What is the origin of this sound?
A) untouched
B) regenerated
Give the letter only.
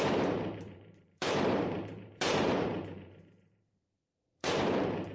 B